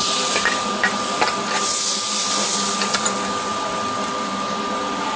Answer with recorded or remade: recorded